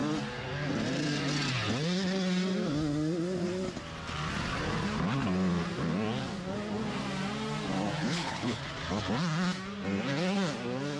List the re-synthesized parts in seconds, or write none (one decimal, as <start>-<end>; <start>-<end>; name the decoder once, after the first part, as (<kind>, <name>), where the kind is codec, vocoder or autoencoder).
8.0-8.6 (codec, HILCodec)